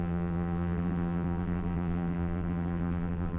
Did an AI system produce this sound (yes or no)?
yes